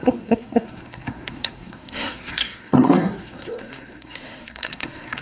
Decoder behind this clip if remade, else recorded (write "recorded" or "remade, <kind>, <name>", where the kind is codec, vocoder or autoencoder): remade, codec, SNAC